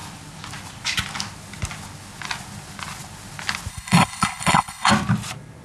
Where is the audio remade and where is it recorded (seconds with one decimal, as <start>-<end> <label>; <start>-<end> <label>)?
0.0-3.7 recorded; 3.7-4.9 remade; 4.9-5.6 recorded